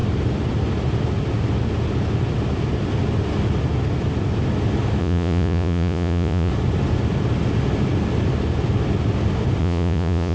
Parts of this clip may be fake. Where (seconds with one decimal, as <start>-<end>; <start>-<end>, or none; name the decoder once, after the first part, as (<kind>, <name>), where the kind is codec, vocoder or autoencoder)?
5.0-6.5 (vocoder, Vocos); 9.6-10.3